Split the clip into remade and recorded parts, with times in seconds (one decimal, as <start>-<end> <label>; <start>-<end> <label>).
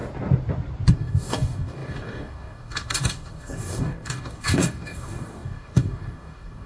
0.0-0.9 recorded; 0.9-6.7 remade